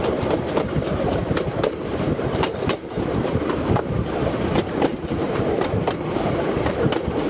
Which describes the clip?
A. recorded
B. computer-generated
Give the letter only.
B